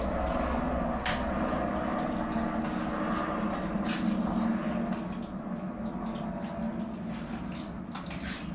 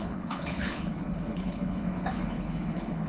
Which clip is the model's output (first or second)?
second